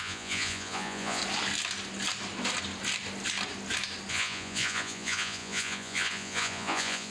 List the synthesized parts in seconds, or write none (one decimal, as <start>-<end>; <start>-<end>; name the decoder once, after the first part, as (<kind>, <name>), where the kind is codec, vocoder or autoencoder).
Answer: 0.0-1.2 (vocoder, Vocos); 4.1-7.1